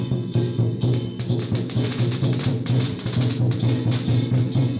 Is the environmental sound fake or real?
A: fake